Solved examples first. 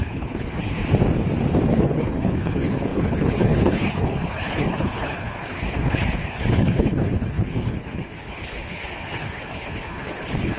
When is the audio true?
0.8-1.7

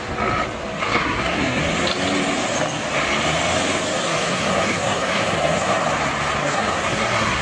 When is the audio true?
0.0-0.8; 1.6-4.0; 5.8-6.4

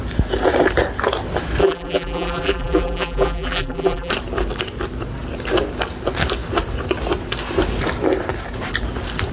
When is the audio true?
0.0-1.6; 4.1-9.3